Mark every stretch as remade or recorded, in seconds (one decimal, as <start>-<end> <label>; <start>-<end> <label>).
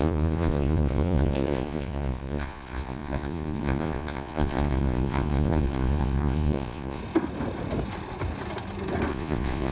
0.0-7.0 remade; 7.0-9.1 recorded; 9.1-9.7 remade